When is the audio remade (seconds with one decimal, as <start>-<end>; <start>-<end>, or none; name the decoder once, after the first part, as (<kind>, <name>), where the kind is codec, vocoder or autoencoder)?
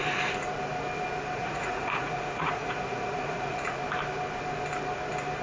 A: 1.4-3.8 (vocoder, Vocos)